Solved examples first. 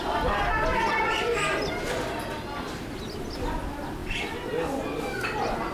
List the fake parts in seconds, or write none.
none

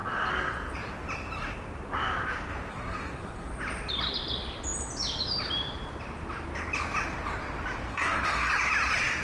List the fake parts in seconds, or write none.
2.7-3.5 (codec, SNAC); 7.9-8.5

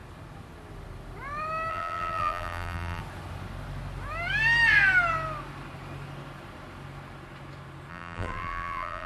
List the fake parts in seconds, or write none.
1.7-3.0 (vocoder, BigVGAN v2); 7.9-9.1